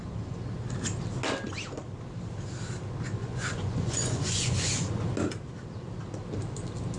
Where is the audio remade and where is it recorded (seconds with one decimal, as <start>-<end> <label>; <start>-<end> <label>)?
0.0-3.2 recorded; 3.2-5.0 remade; 5.0-7.0 recorded

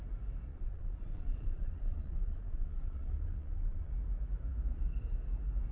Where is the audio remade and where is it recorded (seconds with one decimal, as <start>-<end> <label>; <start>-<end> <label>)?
0.0-0.5 recorded; 0.5-3.9 remade; 3.9-5.7 recorded

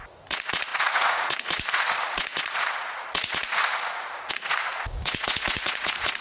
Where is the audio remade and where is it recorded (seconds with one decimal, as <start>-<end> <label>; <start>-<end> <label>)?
0.0-6.2 remade